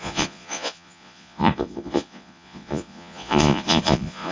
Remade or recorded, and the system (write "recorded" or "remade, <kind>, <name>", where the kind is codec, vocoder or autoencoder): remade, vocoder, Vocos